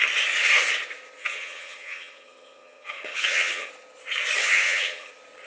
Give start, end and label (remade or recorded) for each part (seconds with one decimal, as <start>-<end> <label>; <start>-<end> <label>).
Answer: 0.0-1.2 recorded; 1.2-3.7 remade; 3.7-4.4 recorded; 4.4-5.1 remade; 5.1-5.5 recorded